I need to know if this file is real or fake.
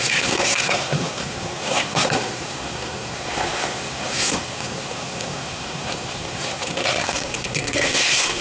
fake